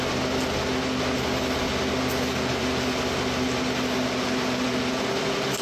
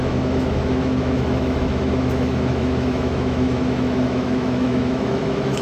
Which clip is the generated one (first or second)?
second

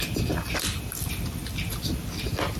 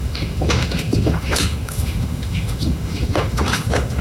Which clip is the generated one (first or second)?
second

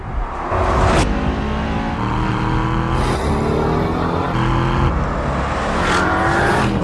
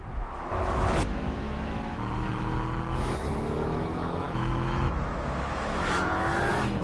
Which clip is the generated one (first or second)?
second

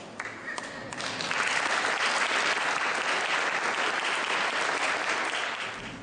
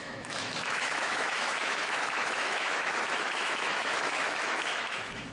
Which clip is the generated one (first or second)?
second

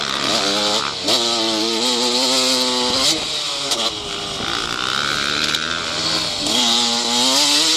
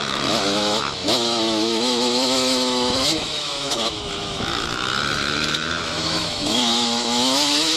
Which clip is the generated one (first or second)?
second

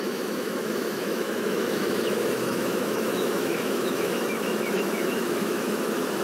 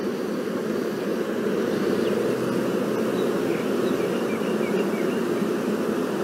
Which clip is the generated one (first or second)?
first